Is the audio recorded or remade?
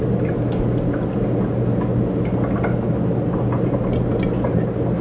recorded